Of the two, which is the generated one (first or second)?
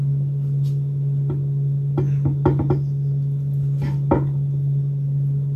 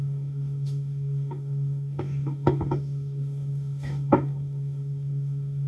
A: second